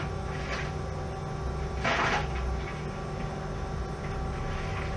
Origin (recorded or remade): recorded